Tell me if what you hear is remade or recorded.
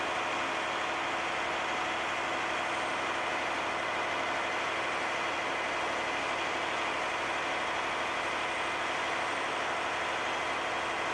recorded